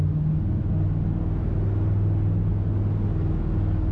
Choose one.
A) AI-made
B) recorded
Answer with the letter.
B